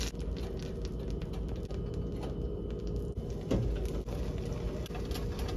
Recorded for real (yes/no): yes